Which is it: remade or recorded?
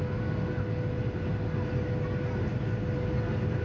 recorded